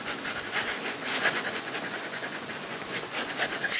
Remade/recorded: remade